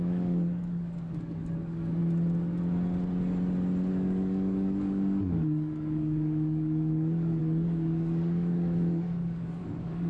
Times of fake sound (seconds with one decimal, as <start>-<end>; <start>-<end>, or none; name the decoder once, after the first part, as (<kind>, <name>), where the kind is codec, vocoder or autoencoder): 0.0-2.0 (codec, DAC); 3.9-10.1

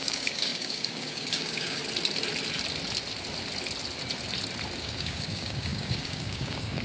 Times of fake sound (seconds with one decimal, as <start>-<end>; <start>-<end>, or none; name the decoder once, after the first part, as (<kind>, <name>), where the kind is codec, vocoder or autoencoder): 0.0-1.8 (codec, DAC); 4.8-6.8

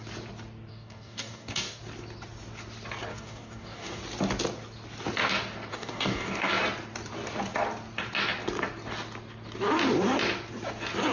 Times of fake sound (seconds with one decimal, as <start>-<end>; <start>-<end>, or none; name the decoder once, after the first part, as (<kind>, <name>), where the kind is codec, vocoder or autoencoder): 0.7-1.8 (codec, DAC); 3.1-4.0; 5.7-6.5

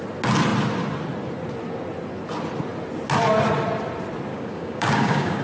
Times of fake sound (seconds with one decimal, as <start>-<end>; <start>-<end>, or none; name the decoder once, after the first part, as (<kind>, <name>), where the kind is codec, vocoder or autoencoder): 4.3-5.4 (codec, DAC)